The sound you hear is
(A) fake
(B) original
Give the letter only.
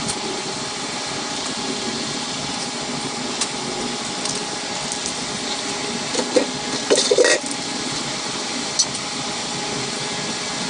B